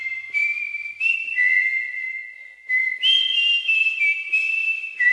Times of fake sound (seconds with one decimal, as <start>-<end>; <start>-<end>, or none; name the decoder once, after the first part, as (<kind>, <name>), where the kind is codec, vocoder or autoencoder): none